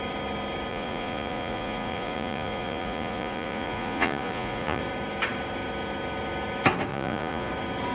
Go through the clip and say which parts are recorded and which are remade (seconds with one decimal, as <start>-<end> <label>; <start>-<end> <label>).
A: 0.0-0.7 recorded; 0.7-4.8 remade; 4.8-6.9 recorded; 6.9-7.5 remade; 7.5-7.9 recorded